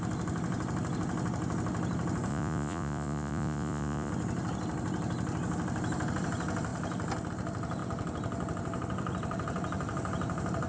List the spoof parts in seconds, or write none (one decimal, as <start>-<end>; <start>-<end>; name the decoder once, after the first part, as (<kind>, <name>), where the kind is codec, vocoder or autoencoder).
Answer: 2.3-4.1 (vocoder, Vocos)